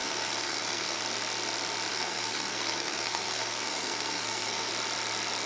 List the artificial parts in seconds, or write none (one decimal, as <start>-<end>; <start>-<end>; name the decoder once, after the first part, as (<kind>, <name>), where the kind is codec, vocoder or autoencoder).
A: 0.0-1.0 (codec, SNAC); 1.9-4.7